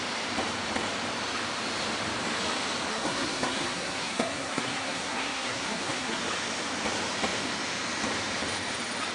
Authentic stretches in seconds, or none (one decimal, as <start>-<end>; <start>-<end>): 0.0-2.9; 6.2-9.1